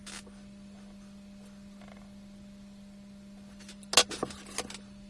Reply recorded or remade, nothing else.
recorded